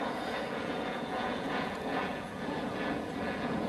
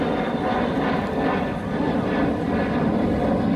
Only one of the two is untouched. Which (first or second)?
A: second